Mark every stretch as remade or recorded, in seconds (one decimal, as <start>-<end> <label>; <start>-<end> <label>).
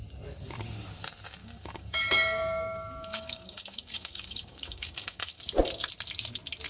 0.0-1.4 recorded; 1.4-5.4 remade; 5.4-6.7 recorded